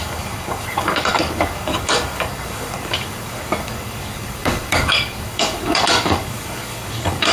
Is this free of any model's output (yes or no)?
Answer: no